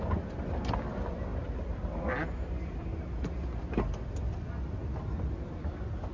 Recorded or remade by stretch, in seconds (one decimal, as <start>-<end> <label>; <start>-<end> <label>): 0.0-6.1 recorded